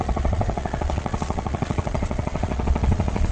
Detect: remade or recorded remade